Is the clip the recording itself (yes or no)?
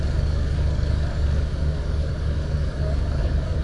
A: no